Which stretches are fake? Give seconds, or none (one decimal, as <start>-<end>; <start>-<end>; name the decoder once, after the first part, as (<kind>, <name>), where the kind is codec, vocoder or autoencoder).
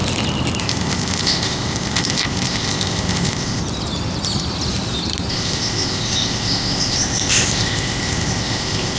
0.6-3.6 (codec, ZipCodec); 5.3-9.0